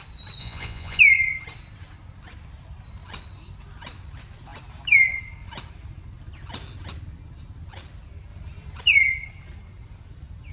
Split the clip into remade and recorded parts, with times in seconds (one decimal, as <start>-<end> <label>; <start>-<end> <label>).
0.0-0.4 recorded; 0.4-1.0 remade; 1.0-10.5 recorded